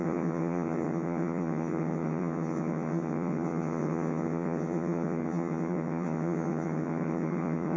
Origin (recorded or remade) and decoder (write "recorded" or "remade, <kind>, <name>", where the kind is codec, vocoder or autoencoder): remade, vocoder, HiFi-GAN